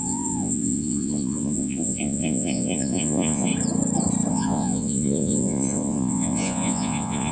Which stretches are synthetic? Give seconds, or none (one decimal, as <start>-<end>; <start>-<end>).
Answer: 0.0-3.5; 4.3-7.3